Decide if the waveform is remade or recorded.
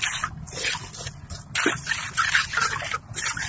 recorded